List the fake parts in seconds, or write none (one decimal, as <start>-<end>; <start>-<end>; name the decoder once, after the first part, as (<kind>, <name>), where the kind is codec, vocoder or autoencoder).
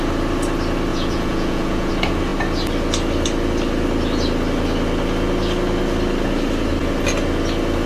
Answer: 0.9-1.9 (vocoder, Vocos)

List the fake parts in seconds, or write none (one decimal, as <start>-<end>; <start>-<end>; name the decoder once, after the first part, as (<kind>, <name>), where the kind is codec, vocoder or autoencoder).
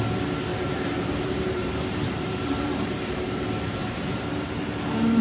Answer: 0.5-3.6 (vocoder, BigVGAN v2)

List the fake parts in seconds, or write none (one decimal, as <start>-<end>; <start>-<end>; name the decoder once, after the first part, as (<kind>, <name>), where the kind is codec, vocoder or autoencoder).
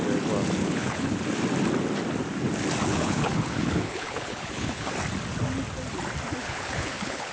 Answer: 0.6-1.2 (codec, HILCodec); 2.9-4.9; 6.4-7.3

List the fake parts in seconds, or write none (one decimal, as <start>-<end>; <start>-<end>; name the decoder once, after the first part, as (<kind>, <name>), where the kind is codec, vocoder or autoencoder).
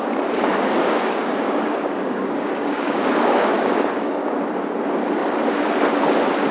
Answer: 0.5-4.4 (codec, DAC)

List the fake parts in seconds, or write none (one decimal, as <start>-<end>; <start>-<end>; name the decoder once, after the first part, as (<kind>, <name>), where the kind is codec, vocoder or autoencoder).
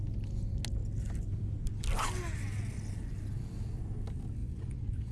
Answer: 4.4-5.1 (vocoder, Vocos)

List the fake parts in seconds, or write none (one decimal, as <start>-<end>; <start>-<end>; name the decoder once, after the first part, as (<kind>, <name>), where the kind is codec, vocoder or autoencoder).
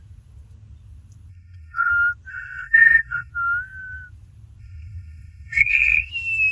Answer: 1.3-1.9 (codec, SNAC); 2.3-3.3; 4.6-6.1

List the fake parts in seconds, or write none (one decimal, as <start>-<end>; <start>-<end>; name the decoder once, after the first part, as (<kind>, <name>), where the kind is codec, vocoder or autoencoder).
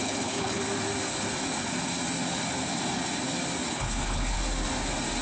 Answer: 0.0-0.6 (codec, HILCodec); 3.7-4.4